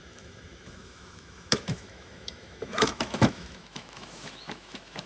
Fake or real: fake